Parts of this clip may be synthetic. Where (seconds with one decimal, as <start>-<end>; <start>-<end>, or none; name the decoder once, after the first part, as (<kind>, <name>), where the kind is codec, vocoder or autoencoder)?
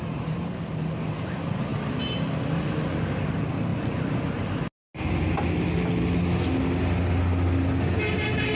none